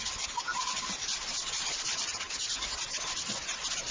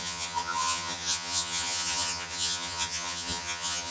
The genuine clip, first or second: first